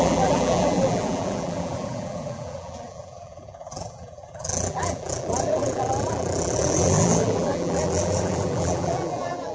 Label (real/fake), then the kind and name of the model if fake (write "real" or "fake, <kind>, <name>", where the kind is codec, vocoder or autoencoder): fake, vocoder, BigVGAN v2